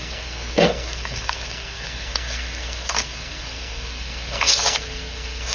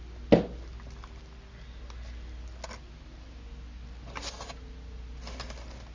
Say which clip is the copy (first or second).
first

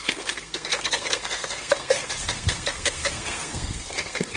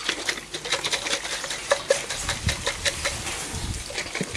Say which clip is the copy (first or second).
first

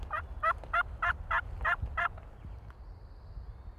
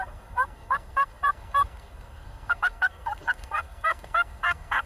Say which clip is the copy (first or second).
second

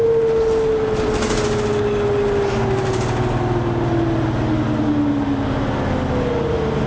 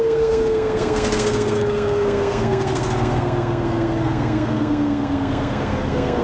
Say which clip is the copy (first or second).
second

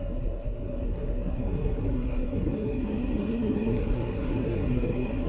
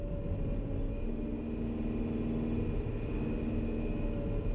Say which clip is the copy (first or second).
first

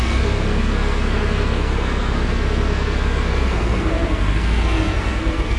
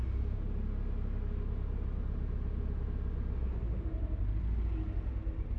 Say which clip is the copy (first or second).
first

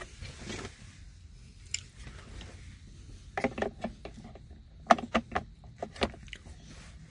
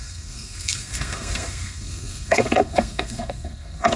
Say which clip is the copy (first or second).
second